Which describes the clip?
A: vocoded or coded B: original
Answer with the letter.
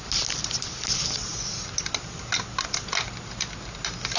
B